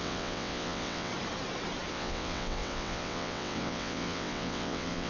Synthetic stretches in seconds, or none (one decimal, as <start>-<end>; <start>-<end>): 0.0-1.1; 1.9-5.1